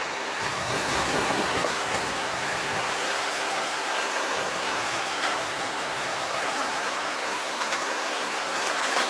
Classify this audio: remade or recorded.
remade